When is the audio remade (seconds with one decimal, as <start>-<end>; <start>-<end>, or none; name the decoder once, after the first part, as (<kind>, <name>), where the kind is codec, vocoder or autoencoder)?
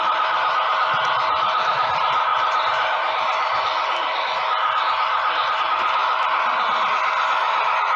none